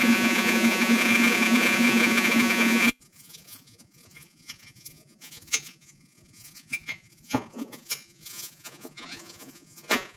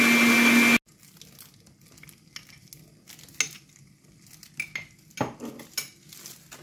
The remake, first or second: first